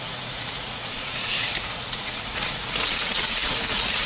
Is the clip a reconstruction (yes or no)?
yes